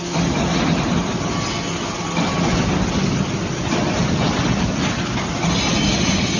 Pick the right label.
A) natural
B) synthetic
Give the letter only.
A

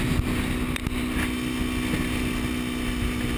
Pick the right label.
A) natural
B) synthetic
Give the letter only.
A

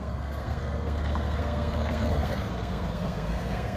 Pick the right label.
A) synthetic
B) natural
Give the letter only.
A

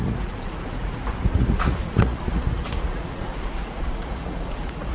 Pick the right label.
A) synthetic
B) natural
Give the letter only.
A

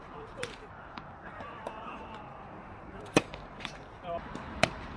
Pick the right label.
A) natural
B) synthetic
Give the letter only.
B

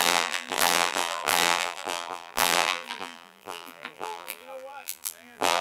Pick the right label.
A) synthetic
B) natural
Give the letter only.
A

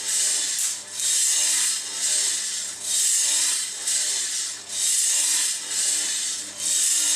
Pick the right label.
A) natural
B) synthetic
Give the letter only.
A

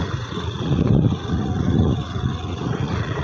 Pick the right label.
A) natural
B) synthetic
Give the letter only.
B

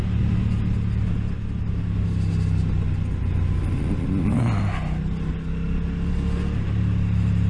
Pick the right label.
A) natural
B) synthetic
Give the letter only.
A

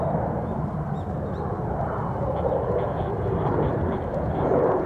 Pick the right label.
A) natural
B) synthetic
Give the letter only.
B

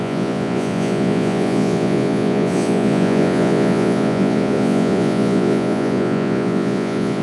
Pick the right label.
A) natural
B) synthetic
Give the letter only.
B